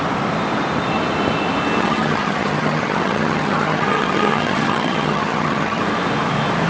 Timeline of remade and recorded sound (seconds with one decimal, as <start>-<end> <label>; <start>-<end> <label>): 0.0-1.8 recorded; 1.8-5.8 remade; 5.8-6.7 recorded